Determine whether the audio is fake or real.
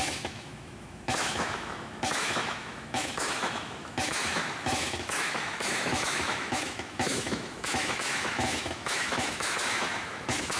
fake